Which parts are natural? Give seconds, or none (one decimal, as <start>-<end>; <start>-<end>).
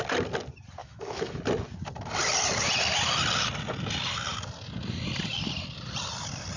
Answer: 0.0-0.8; 1.4-6.6